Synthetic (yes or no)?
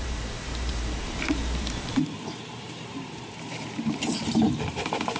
yes